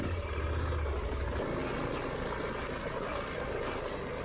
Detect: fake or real real